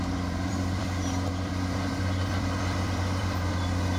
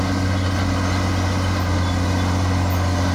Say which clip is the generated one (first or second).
first